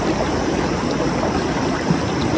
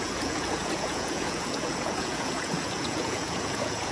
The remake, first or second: second